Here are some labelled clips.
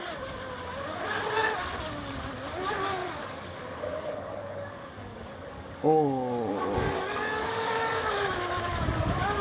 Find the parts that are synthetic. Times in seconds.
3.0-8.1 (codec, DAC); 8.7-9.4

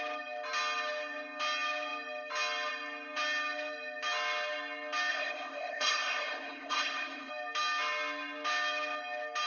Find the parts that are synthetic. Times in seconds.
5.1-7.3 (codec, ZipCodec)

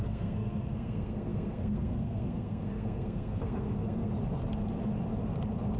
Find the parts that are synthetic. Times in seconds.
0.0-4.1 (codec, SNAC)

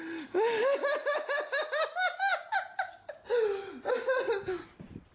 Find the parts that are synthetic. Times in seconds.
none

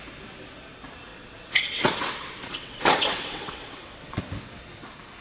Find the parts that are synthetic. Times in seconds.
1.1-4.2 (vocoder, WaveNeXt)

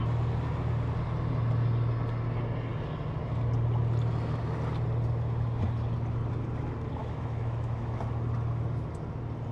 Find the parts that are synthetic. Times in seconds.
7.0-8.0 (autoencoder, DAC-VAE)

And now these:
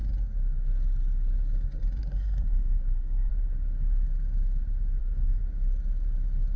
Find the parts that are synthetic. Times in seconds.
2.0-3.3 (codec, SNAC); 5.0-5.4